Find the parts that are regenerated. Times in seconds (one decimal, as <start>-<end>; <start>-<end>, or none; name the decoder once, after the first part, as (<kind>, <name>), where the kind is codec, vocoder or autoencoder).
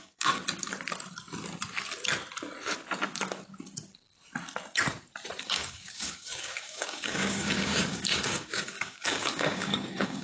0.0-0.4 (codec, DAC); 5.4-10.2